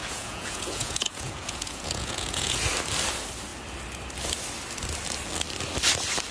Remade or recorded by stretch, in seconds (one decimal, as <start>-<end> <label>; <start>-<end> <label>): 0.0-2.6 remade; 2.6-6.3 recorded